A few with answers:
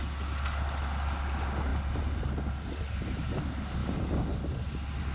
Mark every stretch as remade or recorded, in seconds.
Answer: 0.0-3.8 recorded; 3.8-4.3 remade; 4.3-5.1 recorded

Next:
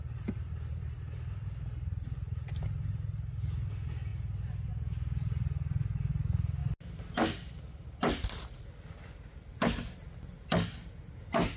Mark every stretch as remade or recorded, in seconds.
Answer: 0.0-11.6 recorded